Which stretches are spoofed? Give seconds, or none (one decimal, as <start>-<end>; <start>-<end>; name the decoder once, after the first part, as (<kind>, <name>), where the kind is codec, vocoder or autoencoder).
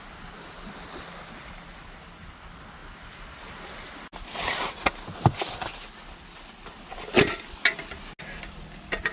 none